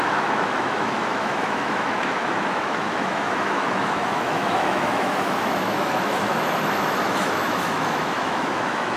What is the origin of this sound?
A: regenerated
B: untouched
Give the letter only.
A